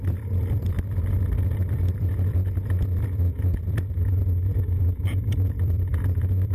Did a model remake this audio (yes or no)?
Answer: yes